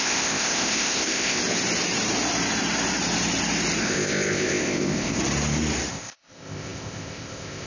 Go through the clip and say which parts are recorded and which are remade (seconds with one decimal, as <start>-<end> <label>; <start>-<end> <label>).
0.0-1.4 remade; 1.4-3.8 recorded; 3.8-5.2 remade; 5.2-5.9 recorded; 5.9-7.7 remade